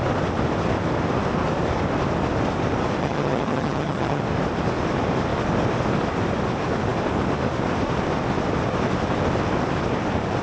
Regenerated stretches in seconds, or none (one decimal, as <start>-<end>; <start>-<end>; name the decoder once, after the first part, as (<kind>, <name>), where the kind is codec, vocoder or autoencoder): 3.0-4.2 (vocoder, HiFi-GAN)

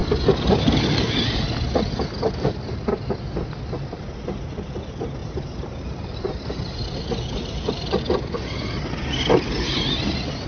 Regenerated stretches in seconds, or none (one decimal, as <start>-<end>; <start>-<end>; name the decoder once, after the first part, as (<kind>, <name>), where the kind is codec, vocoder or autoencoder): none

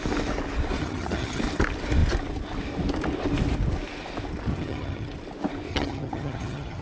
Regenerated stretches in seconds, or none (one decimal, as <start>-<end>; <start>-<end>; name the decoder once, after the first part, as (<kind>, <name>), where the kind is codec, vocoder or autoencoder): 0.8-1.4 (vocoder, HiFi-GAN); 4.5-5.1; 5.7-6.8

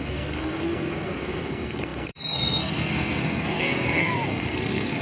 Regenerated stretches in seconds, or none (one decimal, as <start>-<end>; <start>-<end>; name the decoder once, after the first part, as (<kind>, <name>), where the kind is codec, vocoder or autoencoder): 0.0-5.0 (codec, SNAC)

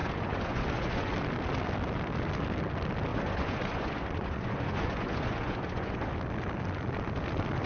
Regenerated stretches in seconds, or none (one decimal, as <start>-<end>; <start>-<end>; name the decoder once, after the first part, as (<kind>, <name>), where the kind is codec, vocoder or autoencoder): 0.0-1.1 (vocoder, Vocos); 3.1-6.1